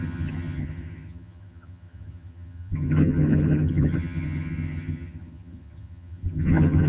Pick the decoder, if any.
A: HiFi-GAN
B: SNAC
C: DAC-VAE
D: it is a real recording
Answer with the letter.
A